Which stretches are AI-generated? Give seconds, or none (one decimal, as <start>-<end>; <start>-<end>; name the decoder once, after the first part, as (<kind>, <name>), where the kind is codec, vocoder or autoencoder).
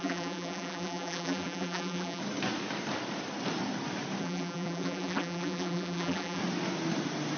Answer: 0.0-2.2 (vocoder, BigVGAN v2); 4.2-6.4